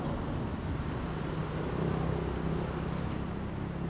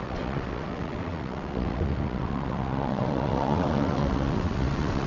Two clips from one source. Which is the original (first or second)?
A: first